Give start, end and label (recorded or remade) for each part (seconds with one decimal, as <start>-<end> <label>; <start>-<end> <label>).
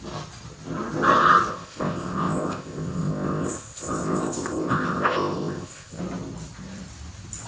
0.0-1.5 recorded; 1.5-6.0 remade; 6.0-7.5 recorded